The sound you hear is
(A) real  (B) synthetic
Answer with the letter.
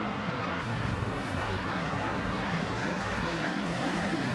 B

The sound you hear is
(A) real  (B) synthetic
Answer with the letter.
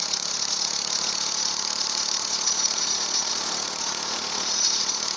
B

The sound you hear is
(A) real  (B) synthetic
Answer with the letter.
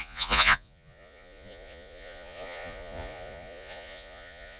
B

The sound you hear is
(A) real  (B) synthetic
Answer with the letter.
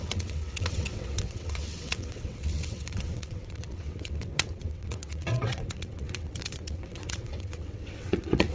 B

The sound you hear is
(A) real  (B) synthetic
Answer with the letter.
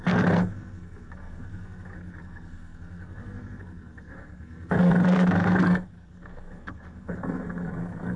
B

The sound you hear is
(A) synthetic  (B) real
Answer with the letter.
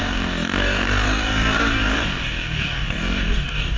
A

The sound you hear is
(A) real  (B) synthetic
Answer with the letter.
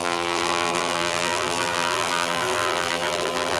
B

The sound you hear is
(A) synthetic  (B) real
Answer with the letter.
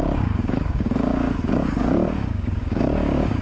A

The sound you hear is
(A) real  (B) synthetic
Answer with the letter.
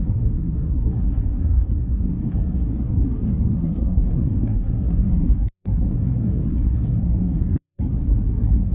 B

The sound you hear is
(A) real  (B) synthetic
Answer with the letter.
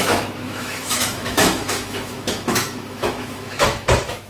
B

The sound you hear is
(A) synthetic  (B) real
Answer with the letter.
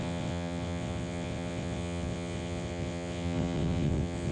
A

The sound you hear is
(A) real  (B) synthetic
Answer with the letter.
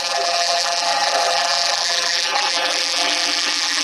B